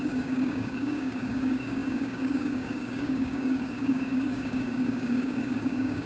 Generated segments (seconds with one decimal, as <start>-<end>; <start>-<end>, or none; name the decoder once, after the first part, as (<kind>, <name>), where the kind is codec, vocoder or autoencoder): 0.0-6.1 (codec, DAC)